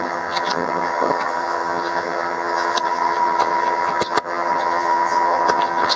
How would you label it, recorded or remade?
remade